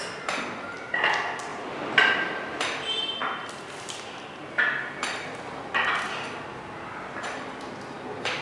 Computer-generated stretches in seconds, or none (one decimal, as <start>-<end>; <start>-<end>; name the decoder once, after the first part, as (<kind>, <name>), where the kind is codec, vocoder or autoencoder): none